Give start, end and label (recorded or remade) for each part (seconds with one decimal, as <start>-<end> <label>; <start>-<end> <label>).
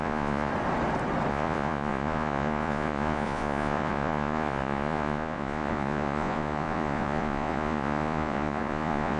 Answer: 0.0-0.5 remade; 0.5-1.3 recorded; 1.3-9.2 remade